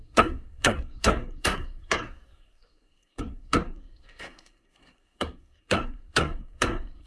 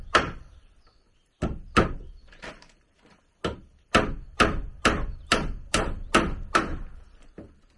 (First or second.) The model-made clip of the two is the first